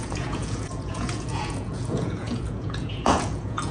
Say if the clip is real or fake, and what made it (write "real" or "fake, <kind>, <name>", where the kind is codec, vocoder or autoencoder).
fake, vocoder, Vocos